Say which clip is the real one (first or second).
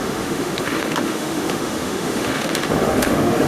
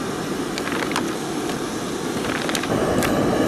second